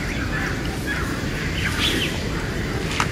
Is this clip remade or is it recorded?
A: recorded